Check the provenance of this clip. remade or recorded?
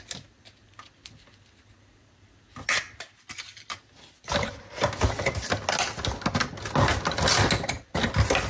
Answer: recorded